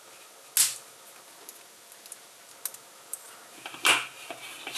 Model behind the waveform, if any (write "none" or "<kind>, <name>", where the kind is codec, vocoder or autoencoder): none